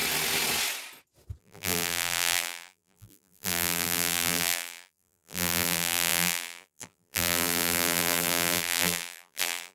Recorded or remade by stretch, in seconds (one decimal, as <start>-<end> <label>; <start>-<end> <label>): 0.0-1.4 recorded; 1.4-9.7 remade